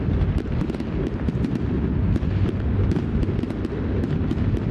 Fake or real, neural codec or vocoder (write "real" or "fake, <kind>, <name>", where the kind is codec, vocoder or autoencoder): real